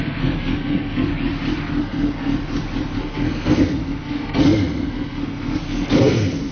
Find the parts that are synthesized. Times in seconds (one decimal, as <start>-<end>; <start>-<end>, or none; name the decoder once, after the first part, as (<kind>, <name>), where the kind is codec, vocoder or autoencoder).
0.0-1.1 (codec, SNAC); 1.8-2.3; 3.0-6.5